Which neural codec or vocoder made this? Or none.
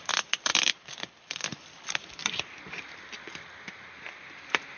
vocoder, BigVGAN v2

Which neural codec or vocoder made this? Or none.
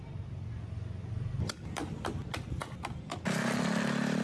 none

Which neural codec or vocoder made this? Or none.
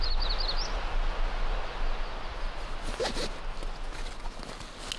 none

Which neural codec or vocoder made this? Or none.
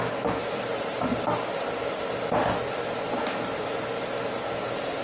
none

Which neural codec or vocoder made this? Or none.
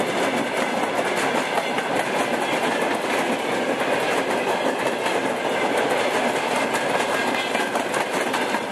none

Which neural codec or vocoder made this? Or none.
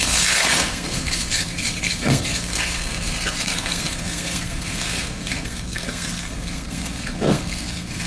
codec, SNAC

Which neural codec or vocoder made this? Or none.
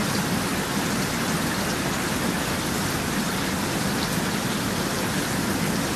none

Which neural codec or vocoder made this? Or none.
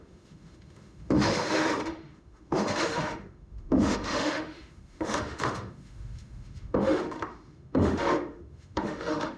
autoencoder, DAC-VAE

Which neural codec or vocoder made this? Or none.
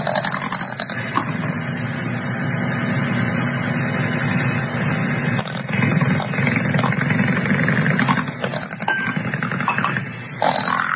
none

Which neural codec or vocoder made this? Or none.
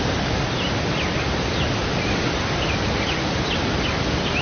vocoder, BigVGAN v2